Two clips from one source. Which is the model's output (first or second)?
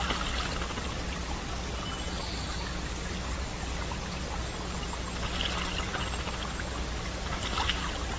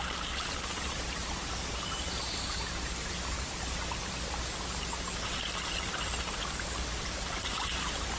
second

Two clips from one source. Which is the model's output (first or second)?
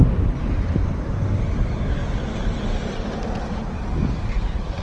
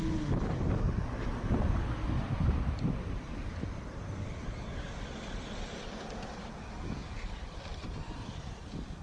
second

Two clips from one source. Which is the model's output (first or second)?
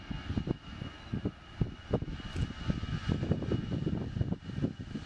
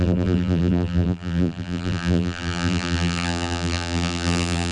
second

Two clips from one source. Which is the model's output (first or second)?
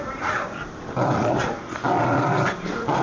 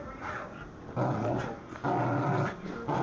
first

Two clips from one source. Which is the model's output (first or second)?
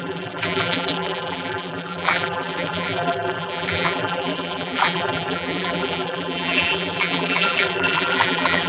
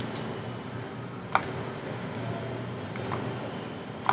first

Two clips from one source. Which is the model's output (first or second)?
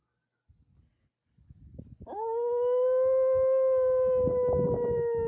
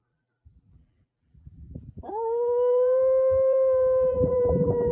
second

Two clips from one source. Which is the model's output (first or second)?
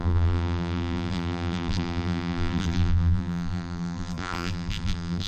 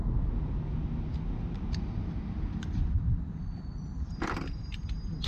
first